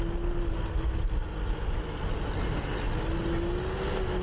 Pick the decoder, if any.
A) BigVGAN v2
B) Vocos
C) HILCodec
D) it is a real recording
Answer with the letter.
D